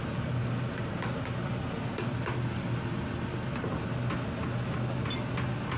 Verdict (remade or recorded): recorded